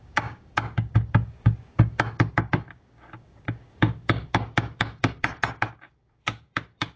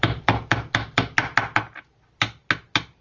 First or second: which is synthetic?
first